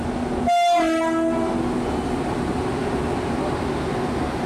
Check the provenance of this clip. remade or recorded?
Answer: recorded